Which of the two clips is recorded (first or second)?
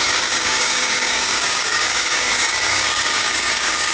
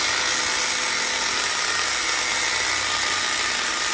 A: second